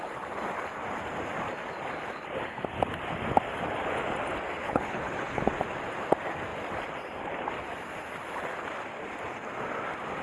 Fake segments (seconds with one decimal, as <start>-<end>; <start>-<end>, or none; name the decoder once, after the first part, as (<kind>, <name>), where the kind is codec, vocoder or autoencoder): 4.6-5.4 (codec, HILCodec)